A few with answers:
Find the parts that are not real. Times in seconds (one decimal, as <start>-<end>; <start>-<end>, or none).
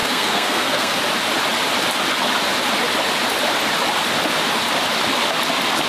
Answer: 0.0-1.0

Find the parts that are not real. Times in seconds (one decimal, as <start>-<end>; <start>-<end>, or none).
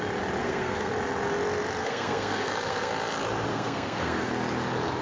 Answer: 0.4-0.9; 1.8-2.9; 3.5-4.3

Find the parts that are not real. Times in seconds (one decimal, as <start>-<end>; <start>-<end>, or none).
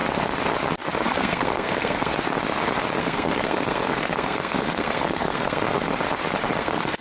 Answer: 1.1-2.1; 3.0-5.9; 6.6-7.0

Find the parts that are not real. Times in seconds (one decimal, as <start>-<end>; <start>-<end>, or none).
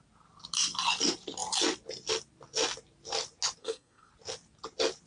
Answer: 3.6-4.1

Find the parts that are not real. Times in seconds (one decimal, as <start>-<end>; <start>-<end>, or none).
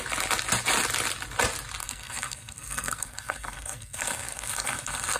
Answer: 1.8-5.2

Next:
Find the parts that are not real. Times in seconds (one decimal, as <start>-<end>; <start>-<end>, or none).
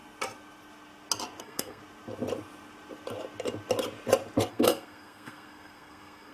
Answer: 1.4-1.8; 4.5-6.3